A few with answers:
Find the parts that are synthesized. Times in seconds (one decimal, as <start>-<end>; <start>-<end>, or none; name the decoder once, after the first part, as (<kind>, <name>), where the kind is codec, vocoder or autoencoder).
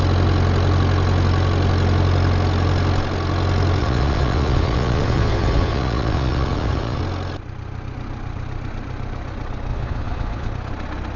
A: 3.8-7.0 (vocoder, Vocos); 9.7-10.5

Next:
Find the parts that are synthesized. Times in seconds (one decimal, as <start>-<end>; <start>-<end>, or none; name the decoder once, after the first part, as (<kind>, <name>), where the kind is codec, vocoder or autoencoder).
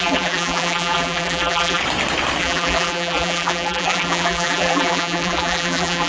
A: 0.0-1.8 (vocoder, BigVGAN v2); 2.4-6.1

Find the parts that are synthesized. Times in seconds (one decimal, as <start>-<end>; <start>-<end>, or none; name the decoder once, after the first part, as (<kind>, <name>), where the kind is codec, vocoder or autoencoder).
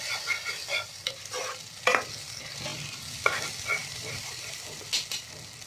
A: 3.8-4.6 (vocoder, BigVGAN v2)